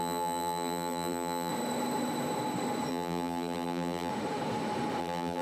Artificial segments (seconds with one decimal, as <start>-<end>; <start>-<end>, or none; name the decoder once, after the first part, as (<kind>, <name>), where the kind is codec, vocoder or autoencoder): 0.0-1.5 (vocoder, BigVGAN v2); 2.9-4.1; 5.0-5.4